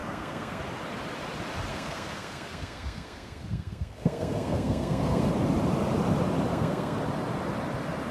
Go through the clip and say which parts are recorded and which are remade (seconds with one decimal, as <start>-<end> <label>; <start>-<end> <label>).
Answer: 0.0-0.6 remade; 0.6-1.7 recorded; 1.7-5.3 remade; 5.3-6.5 recorded; 6.5-7.0 remade; 7.0-8.1 recorded